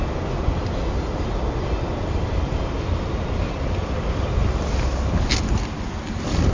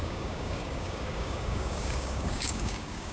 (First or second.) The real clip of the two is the first